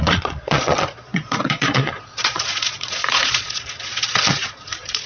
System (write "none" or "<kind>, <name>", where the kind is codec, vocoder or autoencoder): vocoder, Vocos